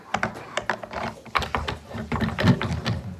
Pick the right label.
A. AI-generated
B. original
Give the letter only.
B